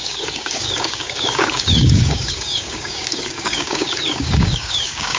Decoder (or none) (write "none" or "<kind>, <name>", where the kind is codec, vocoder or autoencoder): codec, DAC